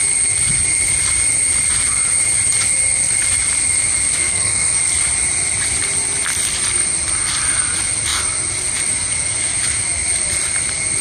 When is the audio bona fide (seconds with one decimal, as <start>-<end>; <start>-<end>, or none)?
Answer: 0.0-4.2; 4.8-11.0